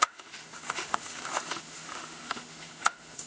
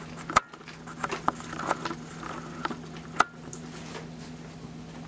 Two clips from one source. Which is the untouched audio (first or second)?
second